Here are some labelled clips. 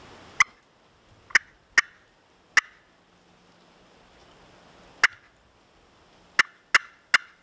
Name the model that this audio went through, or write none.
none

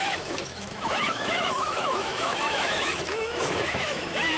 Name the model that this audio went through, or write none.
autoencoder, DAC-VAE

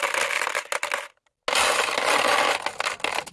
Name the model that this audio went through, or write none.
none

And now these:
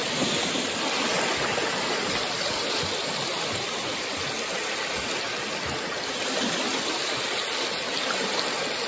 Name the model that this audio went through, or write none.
none